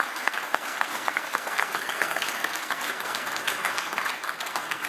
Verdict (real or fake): fake